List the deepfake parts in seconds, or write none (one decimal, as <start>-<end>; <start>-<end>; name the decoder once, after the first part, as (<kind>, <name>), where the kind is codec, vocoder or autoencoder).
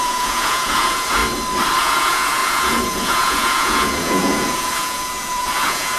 0.0-1.2 (vocoder, Vocos); 1.8-6.0